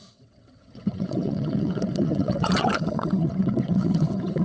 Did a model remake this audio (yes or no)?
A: yes